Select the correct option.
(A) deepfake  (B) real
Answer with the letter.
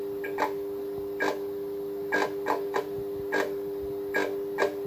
B